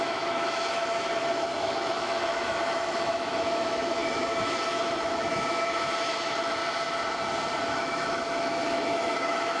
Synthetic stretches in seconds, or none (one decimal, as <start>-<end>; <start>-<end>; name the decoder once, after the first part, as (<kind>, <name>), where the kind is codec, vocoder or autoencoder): 0.0-6.6 (autoencoder, DAC-VAE); 7.6-9.6